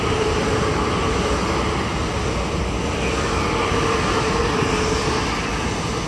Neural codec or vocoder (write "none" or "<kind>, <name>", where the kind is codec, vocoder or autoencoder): none